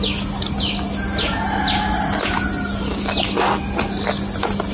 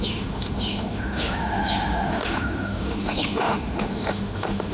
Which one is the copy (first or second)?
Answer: second